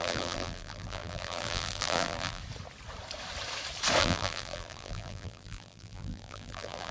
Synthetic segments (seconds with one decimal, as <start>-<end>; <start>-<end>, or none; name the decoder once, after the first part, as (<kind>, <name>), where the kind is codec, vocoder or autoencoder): 0.0-2.4 (vocoder, BigVGAN v2); 4.0-6.9

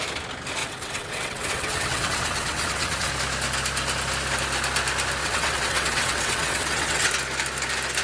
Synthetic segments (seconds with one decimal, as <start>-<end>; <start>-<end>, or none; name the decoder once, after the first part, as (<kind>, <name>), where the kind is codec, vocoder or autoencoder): 0.6-3.1 (vocoder, WaveNeXt); 5.2-7.1

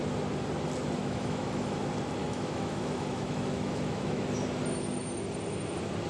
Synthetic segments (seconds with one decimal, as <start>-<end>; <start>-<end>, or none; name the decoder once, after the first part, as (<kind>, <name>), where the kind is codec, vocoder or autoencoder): 1.0-1.8 (autoencoder, DAC-VAE); 2.2-4.2